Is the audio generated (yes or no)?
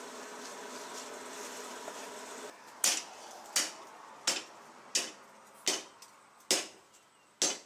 no